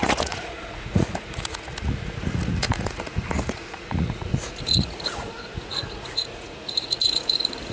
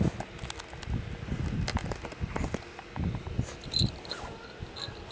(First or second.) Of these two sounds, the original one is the second